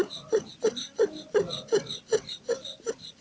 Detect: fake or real real